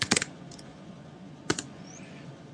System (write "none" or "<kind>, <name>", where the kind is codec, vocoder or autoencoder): vocoder, Vocos